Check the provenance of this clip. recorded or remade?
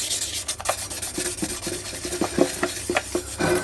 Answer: recorded